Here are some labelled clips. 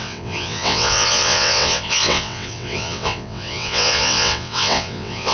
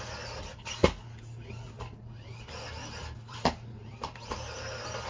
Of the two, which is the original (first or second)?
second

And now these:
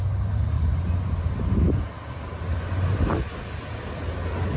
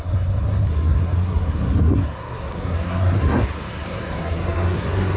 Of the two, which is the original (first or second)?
first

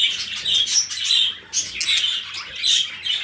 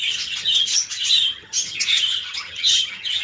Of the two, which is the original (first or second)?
first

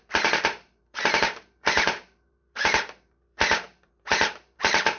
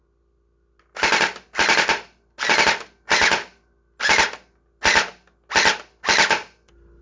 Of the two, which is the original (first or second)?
second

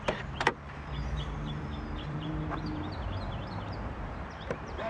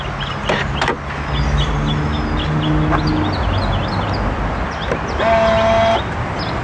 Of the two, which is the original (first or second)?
second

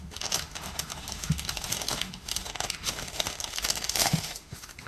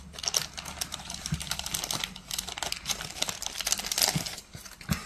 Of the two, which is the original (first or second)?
second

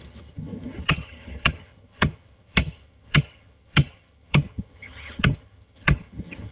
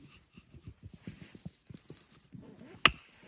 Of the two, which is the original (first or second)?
second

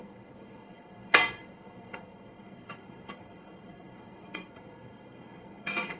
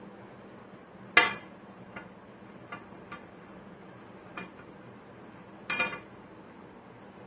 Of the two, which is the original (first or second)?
second